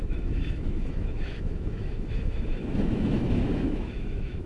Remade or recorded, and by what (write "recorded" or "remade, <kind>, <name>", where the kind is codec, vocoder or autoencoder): remade, autoencoder, DAC-VAE